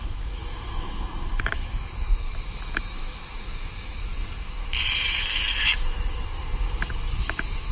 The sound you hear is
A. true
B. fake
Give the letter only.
B